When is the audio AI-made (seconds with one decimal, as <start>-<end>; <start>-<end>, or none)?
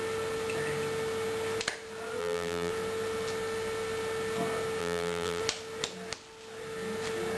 2.2-2.7; 4.8-5.4